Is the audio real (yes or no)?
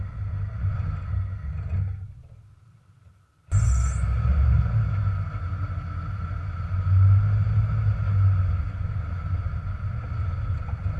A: yes